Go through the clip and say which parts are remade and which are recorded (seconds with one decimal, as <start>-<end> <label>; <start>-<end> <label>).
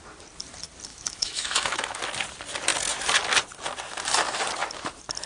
0.0-0.9 recorded; 0.9-2.0 remade; 2.0-5.3 recorded